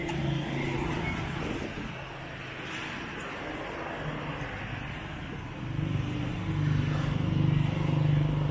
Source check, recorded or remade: recorded